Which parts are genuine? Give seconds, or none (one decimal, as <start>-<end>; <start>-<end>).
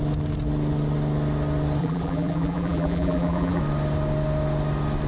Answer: 0.0-1.8; 3.6-5.1